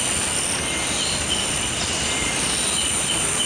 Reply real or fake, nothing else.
real